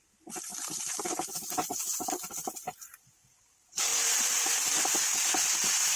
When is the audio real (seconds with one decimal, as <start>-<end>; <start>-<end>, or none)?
0.5-3.2